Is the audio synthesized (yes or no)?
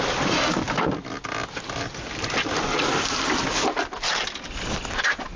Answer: no